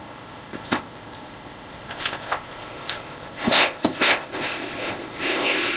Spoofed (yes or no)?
yes